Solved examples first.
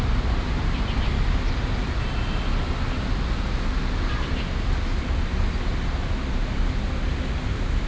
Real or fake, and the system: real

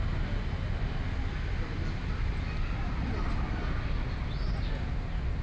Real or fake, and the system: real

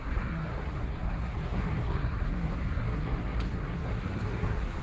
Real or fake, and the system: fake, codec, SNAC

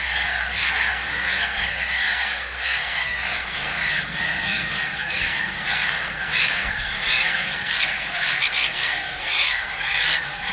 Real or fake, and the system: fake, codec, SNAC